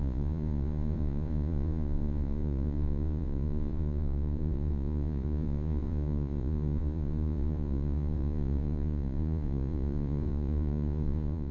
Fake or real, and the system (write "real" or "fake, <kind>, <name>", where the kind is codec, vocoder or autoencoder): fake, vocoder, Vocos